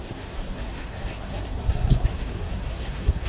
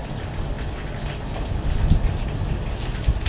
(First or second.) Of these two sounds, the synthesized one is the first